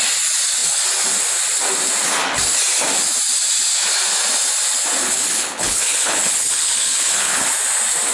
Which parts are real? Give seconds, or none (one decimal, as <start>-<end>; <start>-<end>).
0.0-5.0; 7.5-8.1